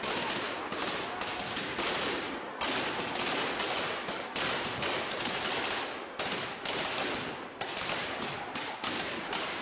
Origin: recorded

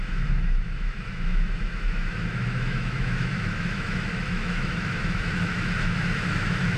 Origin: remade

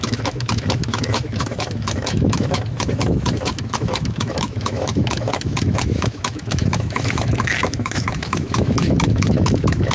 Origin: remade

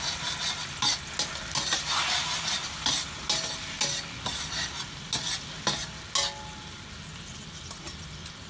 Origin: recorded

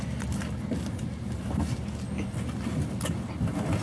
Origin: recorded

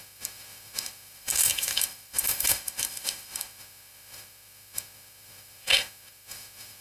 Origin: remade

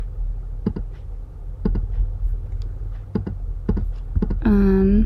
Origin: recorded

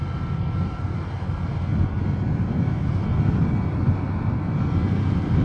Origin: recorded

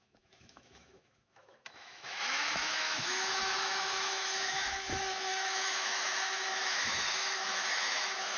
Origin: remade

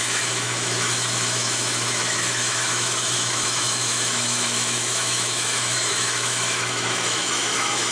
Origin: remade